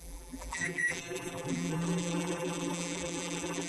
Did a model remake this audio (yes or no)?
yes